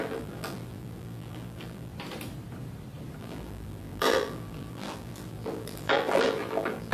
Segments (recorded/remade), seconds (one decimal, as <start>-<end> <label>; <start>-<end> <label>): 0.0-1.9 remade; 1.9-3.2 recorded; 3.2-6.9 remade